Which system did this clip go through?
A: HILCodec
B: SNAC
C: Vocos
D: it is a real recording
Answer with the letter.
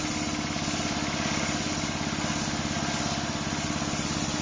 D